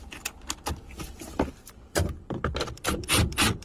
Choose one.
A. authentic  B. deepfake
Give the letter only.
B